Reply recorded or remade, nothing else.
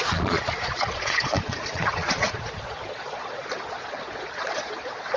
remade